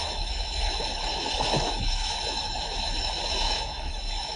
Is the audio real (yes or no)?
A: no